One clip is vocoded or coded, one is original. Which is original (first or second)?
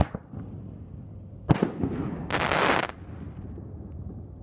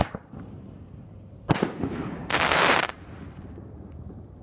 first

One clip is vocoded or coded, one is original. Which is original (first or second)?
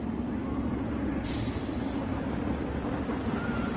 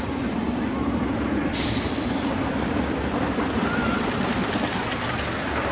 first